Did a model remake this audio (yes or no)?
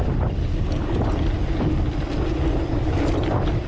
no